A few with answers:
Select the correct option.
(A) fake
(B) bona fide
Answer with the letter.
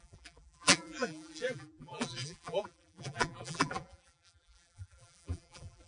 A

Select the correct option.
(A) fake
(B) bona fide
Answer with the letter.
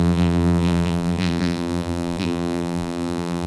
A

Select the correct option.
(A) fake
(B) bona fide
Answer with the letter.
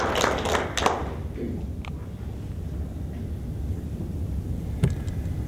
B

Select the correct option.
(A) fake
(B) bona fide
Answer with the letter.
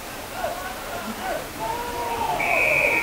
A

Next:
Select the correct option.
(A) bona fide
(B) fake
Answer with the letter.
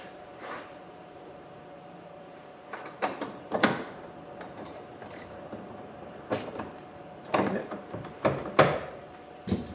B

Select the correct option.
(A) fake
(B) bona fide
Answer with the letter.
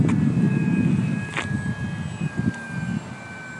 B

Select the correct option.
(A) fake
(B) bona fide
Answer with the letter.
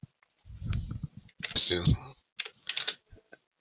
B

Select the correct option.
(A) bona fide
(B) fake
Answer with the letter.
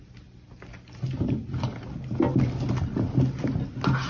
A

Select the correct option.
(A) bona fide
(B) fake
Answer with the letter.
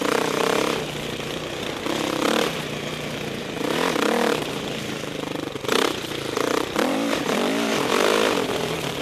B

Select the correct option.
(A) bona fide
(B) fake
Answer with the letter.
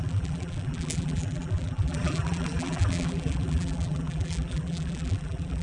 B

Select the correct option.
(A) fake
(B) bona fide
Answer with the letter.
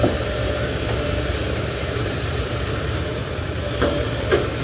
A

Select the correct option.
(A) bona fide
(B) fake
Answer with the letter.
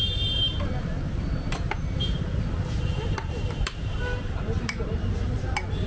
B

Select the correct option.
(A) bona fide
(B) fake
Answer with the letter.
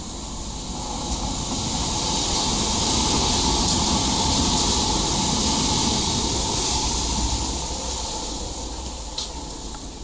A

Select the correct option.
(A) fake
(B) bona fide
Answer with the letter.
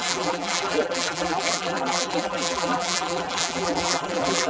A